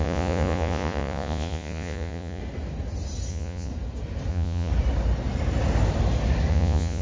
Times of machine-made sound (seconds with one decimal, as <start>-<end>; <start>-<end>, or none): 0.0-2.4; 3.3-3.7; 4.3-4.7; 6.5-7.0